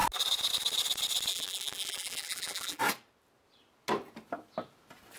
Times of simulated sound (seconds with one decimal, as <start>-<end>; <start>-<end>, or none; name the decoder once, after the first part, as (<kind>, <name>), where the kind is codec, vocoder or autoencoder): 1.3-2.8 (vocoder, BigVGAN v2)